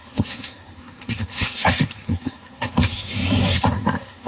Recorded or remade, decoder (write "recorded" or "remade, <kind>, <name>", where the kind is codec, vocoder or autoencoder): remade, codec, SNAC